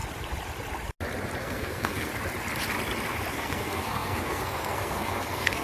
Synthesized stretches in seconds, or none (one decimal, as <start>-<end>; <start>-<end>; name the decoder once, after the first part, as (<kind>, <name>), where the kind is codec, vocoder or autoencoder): 1.4-2.1 (codec, SNAC); 3.3-5.6